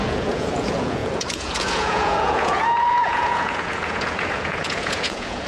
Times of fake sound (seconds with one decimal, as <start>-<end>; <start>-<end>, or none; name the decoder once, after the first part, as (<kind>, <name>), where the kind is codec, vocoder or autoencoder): 0.0-5.5 (vocoder, Vocos)